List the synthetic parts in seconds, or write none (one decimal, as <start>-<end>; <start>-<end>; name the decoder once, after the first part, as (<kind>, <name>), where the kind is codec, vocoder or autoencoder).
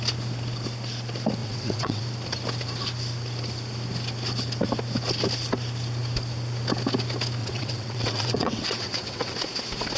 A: 1.4-2.0 (vocoder, WaveNeXt); 7.4-9.3